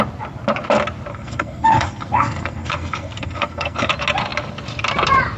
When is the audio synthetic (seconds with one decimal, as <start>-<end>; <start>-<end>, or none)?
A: 1.1-3.9